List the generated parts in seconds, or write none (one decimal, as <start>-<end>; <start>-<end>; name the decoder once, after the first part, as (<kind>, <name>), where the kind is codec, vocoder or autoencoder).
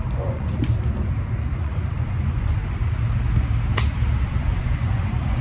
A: 0.0-0.6 (vocoder, Vocos); 1.5-2.6; 4.3-5.4